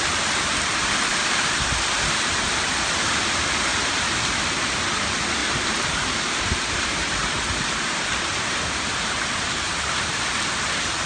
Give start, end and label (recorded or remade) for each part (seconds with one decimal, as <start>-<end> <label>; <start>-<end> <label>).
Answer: 0.0-1.1 recorded; 1.1-2.3 remade; 2.3-3.7 recorded; 3.7-4.4 remade; 4.4-5.4 recorded; 5.4-10.2 remade; 10.2-11.1 recorded